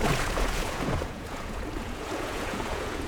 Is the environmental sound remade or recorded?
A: remade